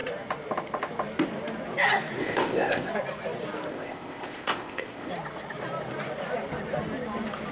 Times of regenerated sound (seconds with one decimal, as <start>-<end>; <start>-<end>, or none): 2.2-2.9; 3.7-5.1